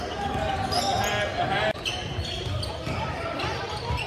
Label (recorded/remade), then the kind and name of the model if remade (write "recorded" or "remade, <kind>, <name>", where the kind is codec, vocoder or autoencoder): recorded